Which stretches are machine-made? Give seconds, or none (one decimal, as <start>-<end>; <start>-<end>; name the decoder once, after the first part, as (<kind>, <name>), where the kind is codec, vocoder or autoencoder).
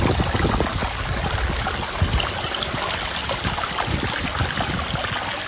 3.2-3.7 (vocoder, BigVGAN v2)